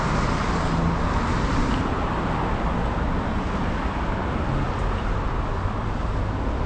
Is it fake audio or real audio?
real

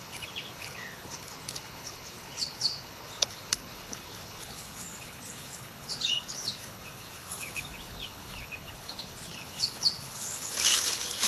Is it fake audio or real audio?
fake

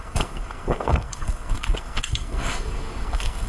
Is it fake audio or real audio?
fake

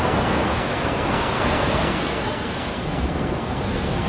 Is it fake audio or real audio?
fake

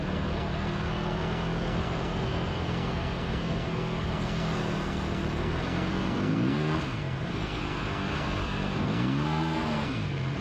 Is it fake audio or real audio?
fake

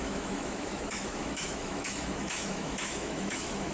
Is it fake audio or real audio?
fake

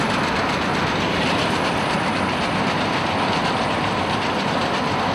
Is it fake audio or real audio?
real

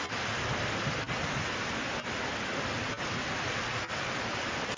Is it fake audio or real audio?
real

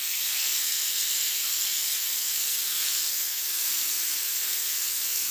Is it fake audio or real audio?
fake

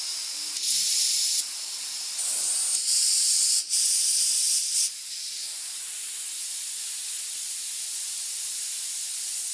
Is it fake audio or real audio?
real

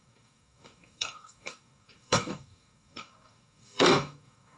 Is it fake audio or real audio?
fake